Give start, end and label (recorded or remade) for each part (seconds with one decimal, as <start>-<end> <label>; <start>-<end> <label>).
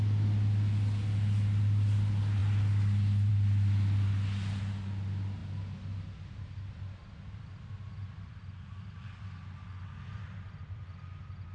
0.0-11.5 recorded